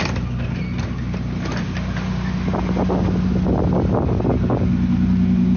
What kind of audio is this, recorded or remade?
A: recorded